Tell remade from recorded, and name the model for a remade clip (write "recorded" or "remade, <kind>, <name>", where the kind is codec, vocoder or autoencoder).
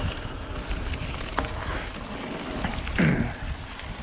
recorded